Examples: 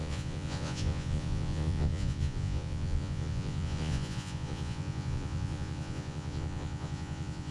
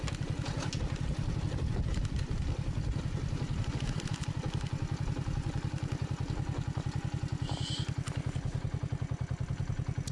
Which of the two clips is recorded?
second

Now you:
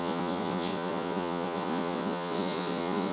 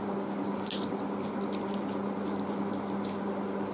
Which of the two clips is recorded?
second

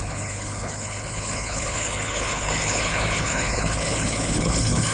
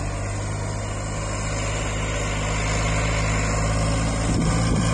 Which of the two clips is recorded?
second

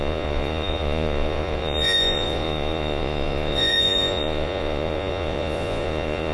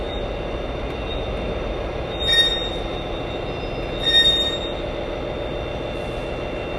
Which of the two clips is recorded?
second